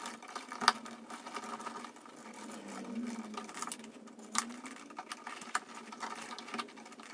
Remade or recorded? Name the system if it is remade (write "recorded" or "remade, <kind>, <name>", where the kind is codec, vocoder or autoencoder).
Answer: recorded